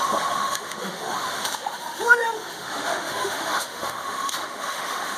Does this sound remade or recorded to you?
remade